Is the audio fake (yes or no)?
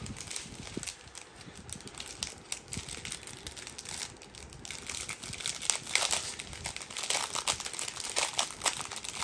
no